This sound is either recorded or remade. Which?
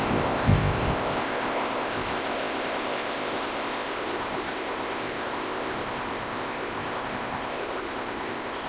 remade